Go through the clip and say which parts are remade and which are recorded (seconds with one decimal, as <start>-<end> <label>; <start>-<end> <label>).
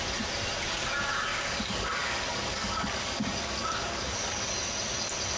0.0-1.3 recorded; 1.3-4.5 remade; 4.5-5.4 recorded